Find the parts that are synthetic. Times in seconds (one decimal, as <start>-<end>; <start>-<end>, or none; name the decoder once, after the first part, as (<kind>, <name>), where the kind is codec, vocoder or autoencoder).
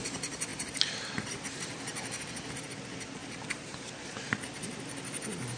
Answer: 0.5-1.8 (vocoder, BigVGAN v2); 3.2-4.8